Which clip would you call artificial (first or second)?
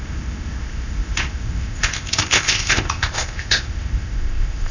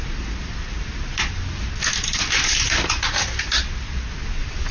first